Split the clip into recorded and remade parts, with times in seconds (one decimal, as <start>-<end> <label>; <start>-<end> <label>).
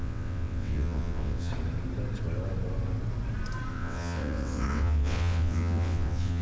0.0-1.5 remade; 1.5-3.7 recorded; 3.7-6.4 remade